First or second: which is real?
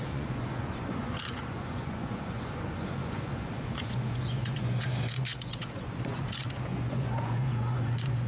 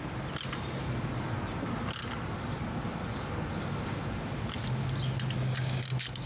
second